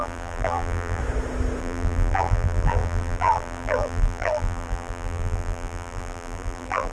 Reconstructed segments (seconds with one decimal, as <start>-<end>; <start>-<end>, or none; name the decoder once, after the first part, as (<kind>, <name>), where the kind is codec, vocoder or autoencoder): 0.0-1.0 (vocoder, BigVGAN v2); 1.6-6.9